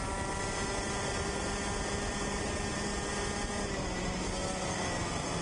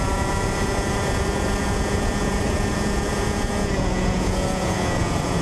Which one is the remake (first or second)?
second